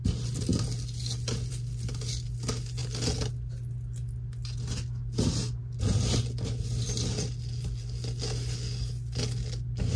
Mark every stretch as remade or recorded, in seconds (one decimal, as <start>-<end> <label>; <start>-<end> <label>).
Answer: 0.0-10.0 recorded